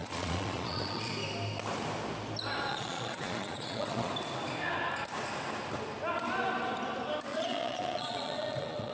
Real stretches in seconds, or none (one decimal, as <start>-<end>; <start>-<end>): 1.1-2.7; 4.1-7.3